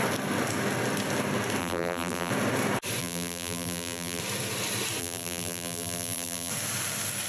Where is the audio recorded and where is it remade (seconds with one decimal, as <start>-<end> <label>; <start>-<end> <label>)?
0.0-1.6 recorded; 1.6-2.3 remade; 2.3-3.0 recorded; 3.0-4.2 remade; 4.2-5.0 recorded; 5.0-6.5 remade; 6.5-7.3 recorded